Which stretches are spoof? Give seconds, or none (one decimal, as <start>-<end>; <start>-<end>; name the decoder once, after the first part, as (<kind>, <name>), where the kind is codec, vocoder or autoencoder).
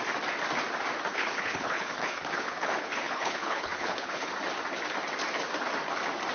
1.1-4.3 (codec, HILCodec)